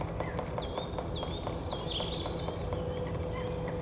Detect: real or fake real